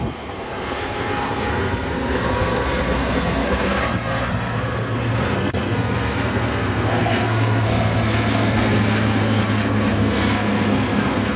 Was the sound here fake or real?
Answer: fake